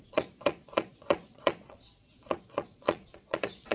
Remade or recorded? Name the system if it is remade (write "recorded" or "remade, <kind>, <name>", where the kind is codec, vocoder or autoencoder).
remade, vocoder, Vocos